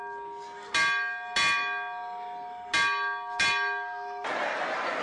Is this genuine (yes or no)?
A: yes